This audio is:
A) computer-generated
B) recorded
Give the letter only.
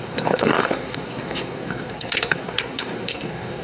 A